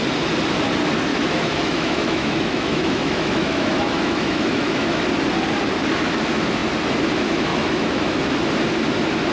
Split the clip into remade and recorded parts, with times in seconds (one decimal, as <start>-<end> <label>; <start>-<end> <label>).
0.0-1.1 recorded; 1.1-5.0 remade; 5.0-7.5 recorded; 7.5-8.4 remade; 8.4-9.3 recorded